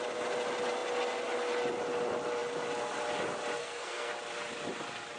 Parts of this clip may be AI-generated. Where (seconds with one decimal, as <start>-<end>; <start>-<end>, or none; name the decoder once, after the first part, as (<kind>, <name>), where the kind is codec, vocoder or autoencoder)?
3.6-4.1 (codec, SNAC)